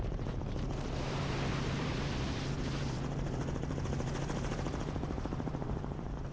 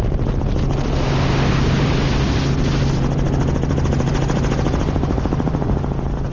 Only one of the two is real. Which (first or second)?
second